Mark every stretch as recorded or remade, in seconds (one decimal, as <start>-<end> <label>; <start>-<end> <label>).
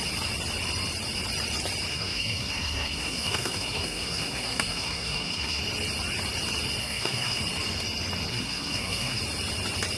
0.0-1.9 recorded; 1.9-5.6 remade; 5.6-6.8 recorded; 6.8-7.4 remade; 7.4-8.3 recorded; 8.3-9.2 remade; 9.2-10.0 recorded